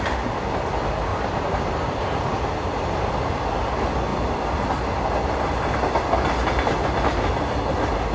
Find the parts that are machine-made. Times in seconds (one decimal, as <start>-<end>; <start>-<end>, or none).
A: 1.1-3.3